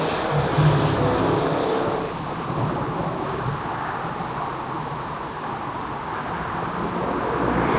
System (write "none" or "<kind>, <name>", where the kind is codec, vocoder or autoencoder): none